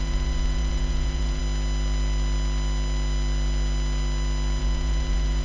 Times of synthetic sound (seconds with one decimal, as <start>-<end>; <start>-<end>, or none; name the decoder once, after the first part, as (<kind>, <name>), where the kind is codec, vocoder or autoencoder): 0.0-1.4 (vocoder, Vocos); 4.6-5.4